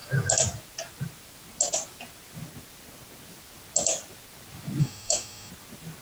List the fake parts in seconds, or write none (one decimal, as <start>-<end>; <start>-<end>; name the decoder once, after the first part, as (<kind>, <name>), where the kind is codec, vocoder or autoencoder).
4.8-5.5 (autoencoder, DAC-VAE)